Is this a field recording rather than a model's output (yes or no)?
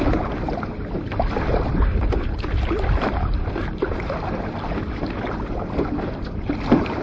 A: yes